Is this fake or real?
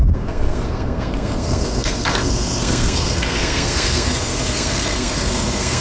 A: fake